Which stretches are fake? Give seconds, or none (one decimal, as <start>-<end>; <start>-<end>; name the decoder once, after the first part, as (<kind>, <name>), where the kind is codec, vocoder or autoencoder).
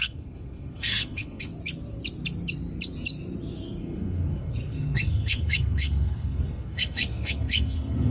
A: 0.0-1.5 (codec, SNAC); 3.8-8.1